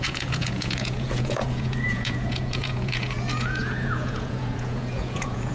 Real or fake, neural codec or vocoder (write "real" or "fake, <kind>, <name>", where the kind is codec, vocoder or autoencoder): fake, vocoder, Vocos